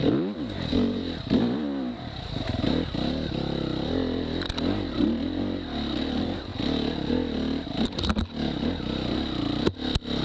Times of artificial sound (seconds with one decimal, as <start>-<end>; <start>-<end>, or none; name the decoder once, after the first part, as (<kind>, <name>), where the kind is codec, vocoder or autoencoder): none